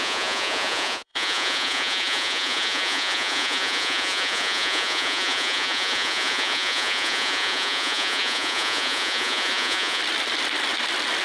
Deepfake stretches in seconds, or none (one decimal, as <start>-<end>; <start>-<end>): 0.0-10.0